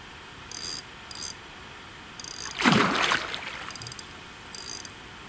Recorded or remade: recorded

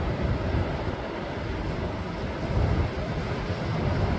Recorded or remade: recorded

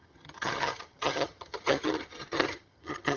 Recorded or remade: remade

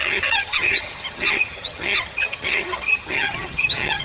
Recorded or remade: remade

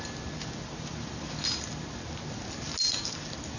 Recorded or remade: recorded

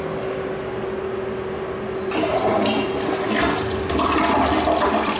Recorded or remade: recorded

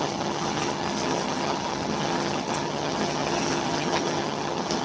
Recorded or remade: remade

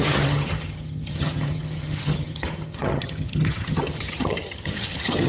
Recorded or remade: remade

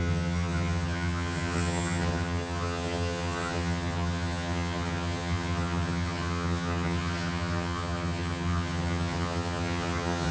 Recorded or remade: remade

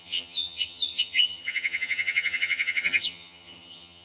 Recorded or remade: remade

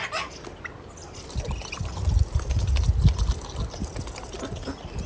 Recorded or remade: recorded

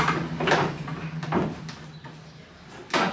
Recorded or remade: recorded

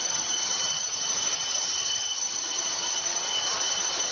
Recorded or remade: remade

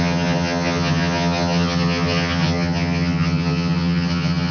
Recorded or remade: remade